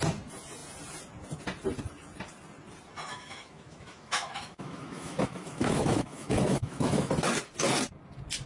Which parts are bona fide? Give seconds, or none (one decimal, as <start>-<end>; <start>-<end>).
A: 0.0-3.1; 7.1-8.5